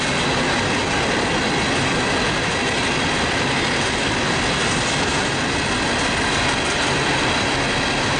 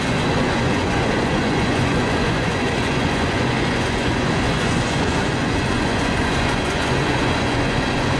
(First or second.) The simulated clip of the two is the second